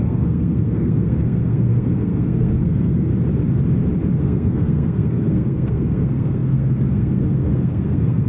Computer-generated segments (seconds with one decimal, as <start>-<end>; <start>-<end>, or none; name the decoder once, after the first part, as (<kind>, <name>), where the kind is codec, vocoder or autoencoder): 0.0-3.1 (codec, SNAC); 4.2-8.3